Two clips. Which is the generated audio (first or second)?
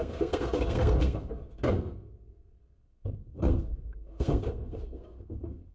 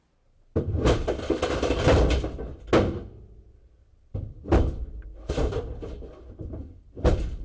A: first